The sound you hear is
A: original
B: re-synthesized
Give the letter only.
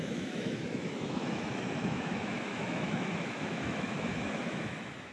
B